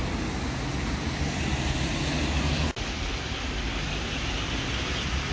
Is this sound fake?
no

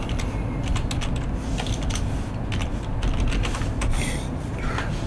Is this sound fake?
no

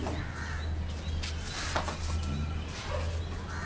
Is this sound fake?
no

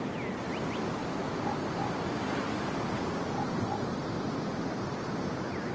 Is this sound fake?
no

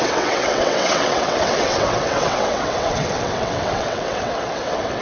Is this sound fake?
yes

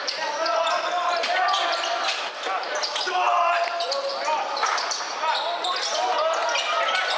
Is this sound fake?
no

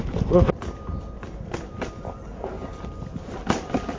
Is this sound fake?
no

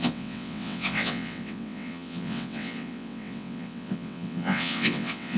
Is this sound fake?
yes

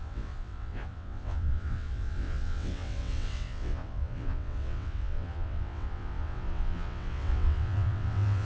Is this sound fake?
yes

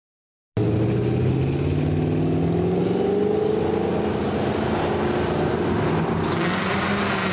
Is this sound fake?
no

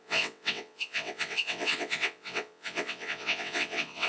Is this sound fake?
yes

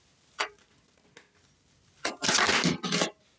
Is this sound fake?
no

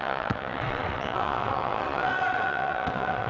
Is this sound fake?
yes